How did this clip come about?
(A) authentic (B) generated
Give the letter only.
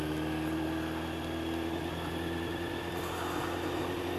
A